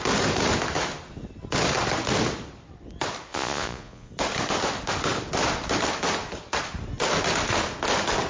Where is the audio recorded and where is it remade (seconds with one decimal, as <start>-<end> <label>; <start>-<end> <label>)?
0.0-3.3 recorded; 3.3-4.1 remade; 4.1-8.3 recorded